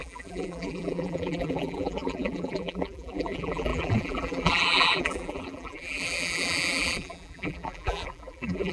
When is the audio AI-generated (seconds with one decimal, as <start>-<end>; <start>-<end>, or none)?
0.0-8.7